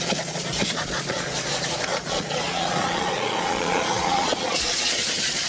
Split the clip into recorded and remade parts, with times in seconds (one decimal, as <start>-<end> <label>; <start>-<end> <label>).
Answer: 0.0-5.5 remade